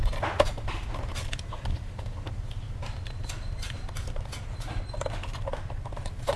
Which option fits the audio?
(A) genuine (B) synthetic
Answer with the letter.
A